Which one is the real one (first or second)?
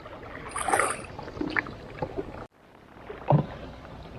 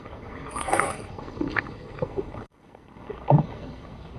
first